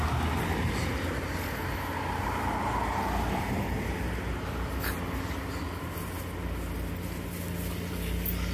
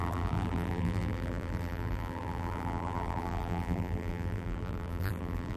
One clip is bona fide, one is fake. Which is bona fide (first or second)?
first